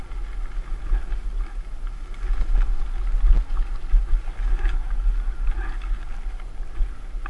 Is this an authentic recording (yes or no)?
yes